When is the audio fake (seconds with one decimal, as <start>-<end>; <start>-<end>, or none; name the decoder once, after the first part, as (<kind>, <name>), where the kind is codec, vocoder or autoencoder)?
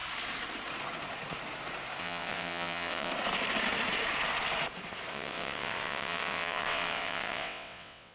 2.0-3.1 (vocoder, WaveNeXt); 5.1-8.1